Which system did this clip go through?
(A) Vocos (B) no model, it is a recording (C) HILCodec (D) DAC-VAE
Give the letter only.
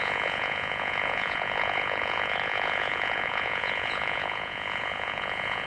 A